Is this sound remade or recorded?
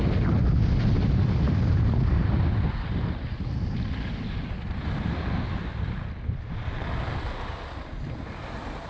recorded